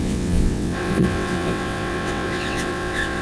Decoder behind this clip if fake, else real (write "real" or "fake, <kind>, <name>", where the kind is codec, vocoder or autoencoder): fake, vocoder, WaveNeXt